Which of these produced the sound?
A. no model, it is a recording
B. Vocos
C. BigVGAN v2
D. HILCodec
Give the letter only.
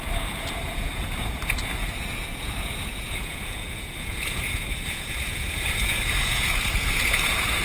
B